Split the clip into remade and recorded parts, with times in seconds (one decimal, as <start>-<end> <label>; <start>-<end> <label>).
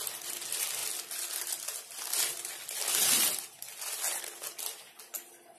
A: 0.0-5.6 recorded